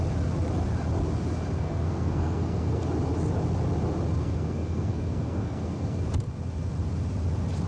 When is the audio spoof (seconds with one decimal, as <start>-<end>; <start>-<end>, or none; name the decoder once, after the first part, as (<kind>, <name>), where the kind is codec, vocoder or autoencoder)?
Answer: 1.5-2.8 (codec, SNAC); 4.2-6.0